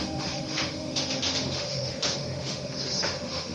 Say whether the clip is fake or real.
fake